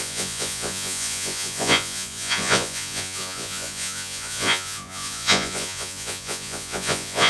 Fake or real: fake